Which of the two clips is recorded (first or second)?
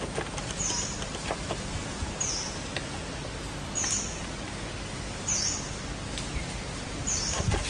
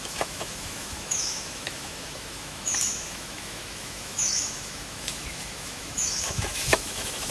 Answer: first